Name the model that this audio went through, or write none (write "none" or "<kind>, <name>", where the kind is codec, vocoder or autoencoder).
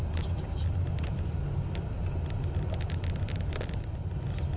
none